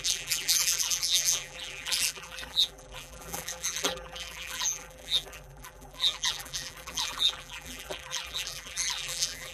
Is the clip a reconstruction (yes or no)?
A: yes